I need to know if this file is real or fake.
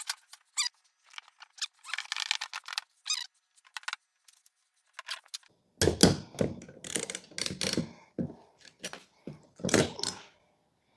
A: real